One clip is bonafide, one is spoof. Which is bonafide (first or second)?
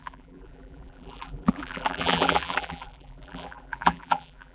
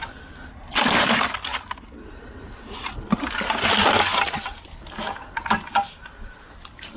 second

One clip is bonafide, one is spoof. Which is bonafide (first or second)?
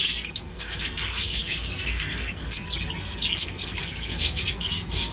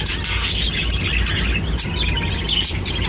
second